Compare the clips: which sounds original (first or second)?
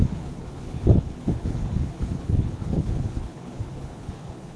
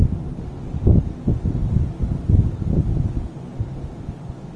second